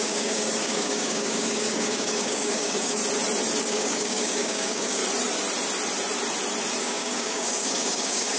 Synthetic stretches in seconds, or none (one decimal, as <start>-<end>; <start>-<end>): 0.0-3.0; 3.6-5.0; 6.8-8.4